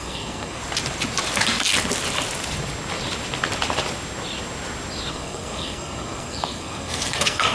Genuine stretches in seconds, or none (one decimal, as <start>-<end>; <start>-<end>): 0.6-5.1